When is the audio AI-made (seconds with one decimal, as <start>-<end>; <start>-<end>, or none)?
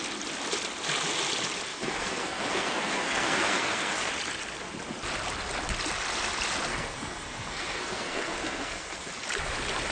1.7-4.1; 6.7-9.1